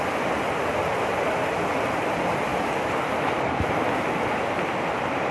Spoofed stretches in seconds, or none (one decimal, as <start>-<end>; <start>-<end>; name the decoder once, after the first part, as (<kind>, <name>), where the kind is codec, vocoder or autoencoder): none